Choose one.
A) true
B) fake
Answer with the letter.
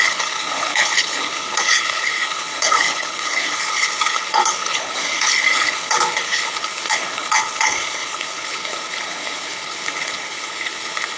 B